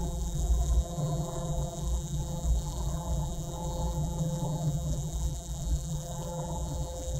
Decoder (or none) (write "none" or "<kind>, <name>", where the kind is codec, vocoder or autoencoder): vocoder, BigVGAN v2